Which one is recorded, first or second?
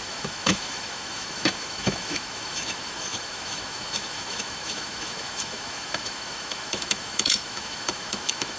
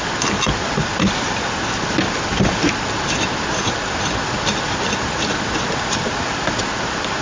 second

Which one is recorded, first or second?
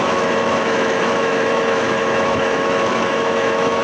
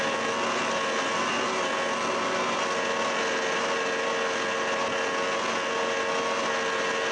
second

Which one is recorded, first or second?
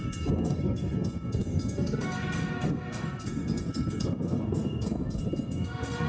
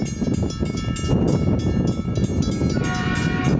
second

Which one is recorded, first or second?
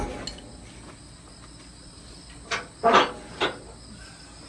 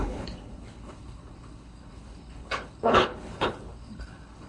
first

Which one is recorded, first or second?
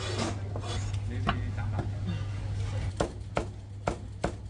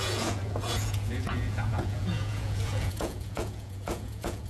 first